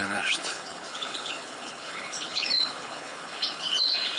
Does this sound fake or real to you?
fake